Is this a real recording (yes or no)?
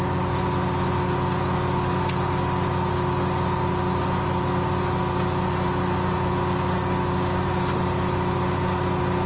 yes